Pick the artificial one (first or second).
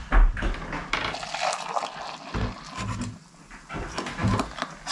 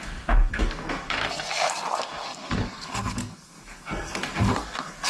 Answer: second